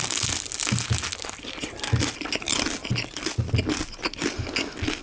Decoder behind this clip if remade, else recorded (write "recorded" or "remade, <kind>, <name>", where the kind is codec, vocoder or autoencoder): recorded